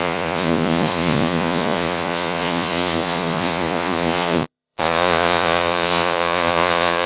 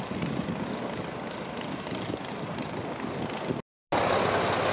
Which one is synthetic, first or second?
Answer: first